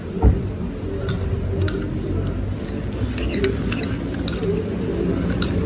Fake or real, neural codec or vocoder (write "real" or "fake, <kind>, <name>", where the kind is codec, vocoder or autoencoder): real